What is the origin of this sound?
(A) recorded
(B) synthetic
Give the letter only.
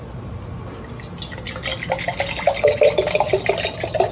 A